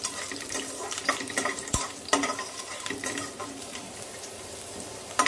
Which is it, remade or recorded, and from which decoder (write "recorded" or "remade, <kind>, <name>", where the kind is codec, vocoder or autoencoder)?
remade, vocoder, BigVGAN v2